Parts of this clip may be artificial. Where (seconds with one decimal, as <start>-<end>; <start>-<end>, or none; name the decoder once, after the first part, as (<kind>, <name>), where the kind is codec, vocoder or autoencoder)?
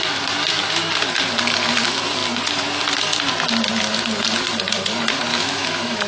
5.3-6.1 (autoencoder, DAC-VAE)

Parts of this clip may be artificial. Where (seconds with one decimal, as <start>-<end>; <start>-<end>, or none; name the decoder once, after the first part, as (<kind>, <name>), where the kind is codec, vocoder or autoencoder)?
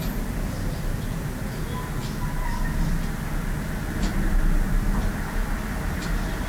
none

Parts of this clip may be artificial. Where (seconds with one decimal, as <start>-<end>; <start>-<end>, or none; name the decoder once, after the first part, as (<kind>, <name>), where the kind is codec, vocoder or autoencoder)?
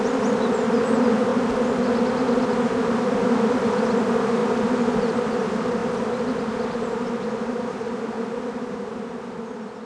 0.0-1.3 (vocoder, BigVGAN v2); 2.5-5.8; 7.9-9.9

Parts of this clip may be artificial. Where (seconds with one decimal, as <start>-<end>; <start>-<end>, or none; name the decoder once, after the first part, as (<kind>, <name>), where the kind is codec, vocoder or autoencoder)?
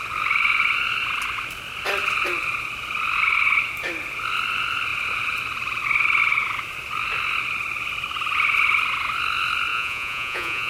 9.7-10.7 (vocoder, Vocos)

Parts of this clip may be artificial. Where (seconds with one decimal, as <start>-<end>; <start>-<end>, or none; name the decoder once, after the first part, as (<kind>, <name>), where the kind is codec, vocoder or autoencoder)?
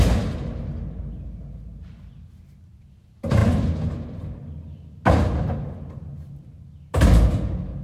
none